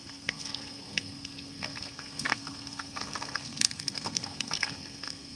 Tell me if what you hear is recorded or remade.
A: remade